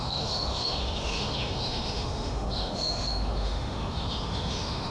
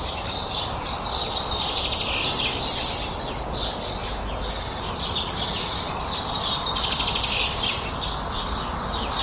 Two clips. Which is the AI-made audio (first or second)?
first